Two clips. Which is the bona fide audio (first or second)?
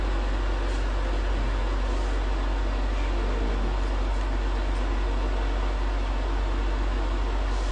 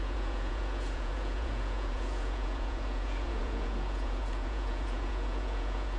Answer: first